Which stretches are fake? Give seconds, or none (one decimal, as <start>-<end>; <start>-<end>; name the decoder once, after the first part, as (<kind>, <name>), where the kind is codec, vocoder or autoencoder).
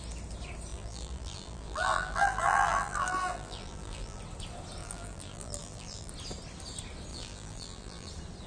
0.7-4.2 (vocoder, BigVGAN v2); 4.8-6.1; 7.1-8.1